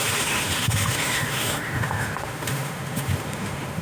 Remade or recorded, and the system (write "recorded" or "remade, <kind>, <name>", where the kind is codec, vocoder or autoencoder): remade, autoencoder, DAC-VAE